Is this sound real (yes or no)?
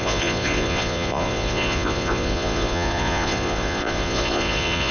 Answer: no